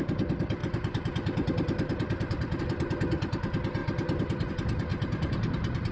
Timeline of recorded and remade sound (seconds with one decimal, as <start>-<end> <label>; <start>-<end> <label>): 0.0-0.6 recorded; 0.6-2.6 remade; 2.6-4.9 recorded; 4.9-5.9 remade